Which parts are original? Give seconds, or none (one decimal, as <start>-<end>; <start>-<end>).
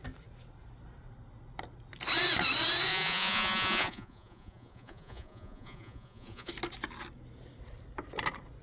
0.0-2.9; 6.5-8.6